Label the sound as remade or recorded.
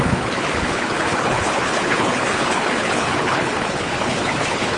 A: remade